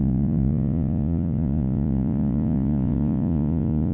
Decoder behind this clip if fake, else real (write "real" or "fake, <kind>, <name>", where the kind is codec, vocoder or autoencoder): fake, vocoder, Vocos